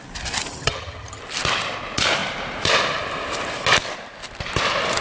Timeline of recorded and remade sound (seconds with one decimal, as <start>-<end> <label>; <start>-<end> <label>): 0.0-0.5 recorded; 0.5-1.2 remade; 1.2-5.0 recorded